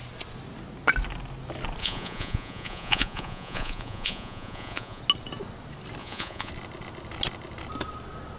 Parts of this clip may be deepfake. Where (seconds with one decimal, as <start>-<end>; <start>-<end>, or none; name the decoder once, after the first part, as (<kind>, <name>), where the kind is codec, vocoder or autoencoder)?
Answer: 1.8-5.0 (vocoder, Vocos); 6.0-6.5